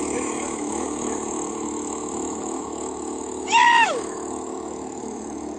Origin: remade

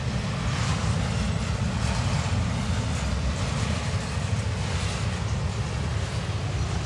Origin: recorded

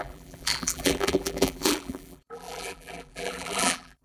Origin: remade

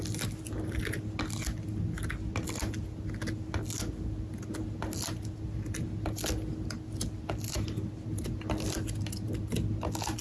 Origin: recorded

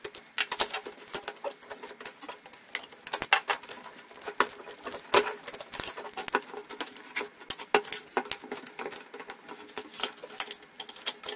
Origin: recorded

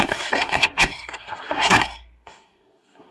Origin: remade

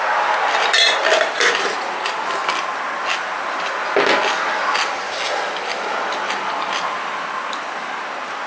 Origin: recorded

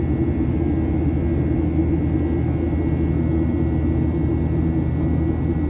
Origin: recorded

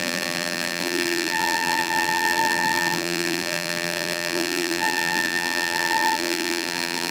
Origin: remade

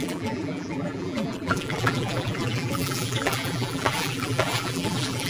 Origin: remade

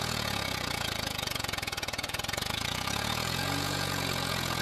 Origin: remade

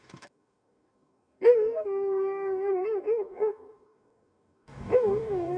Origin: remade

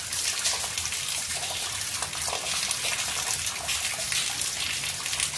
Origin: recorded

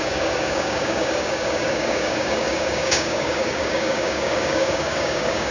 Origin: remade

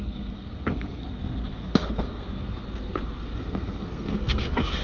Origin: remade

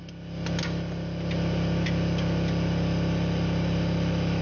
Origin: recorded